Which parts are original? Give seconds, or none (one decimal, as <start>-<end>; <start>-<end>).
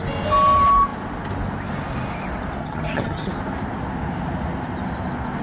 0.0-2.6; 3.3-5.4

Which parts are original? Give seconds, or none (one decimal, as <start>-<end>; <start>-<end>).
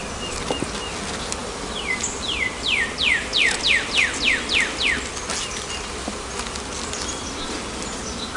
0.0-1.4; 2.8-8.4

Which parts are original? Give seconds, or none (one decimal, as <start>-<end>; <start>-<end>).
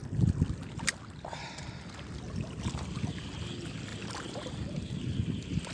0.0-5.7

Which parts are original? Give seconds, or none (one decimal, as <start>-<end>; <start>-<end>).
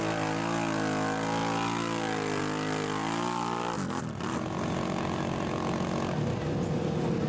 0.0-7.3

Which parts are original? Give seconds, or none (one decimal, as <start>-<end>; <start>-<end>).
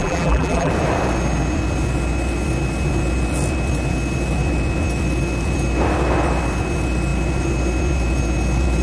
0.7-8.8